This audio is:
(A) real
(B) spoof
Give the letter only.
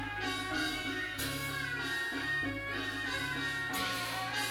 A